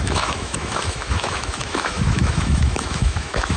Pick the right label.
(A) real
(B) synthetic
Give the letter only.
B